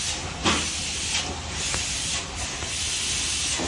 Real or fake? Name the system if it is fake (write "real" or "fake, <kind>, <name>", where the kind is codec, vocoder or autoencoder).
real